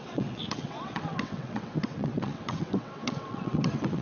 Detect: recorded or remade remade